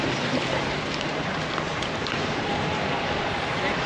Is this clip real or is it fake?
fake